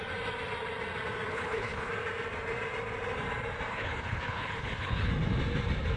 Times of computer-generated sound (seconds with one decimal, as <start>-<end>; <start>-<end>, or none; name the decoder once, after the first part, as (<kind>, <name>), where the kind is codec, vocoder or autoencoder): 1.3-1.9 (codec, HILCodec); 3.7-5.1